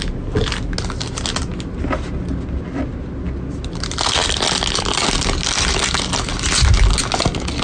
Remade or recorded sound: recorded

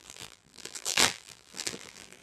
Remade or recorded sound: remade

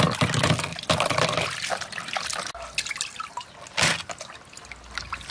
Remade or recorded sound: recorded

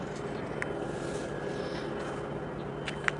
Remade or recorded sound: recorded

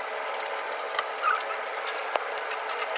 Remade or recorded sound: recorded